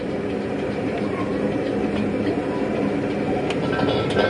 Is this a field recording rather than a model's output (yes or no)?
yes